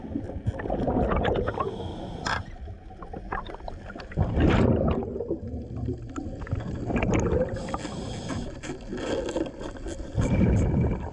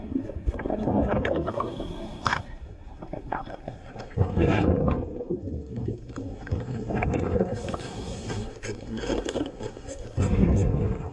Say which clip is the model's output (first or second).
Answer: second